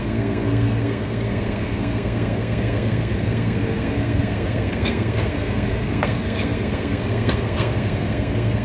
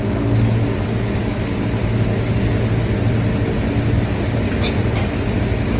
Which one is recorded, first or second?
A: second